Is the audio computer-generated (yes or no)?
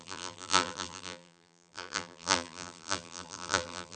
yes